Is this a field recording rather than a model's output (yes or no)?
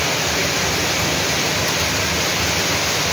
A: yes